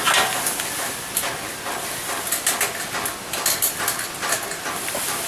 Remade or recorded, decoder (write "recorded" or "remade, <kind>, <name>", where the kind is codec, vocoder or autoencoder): recorded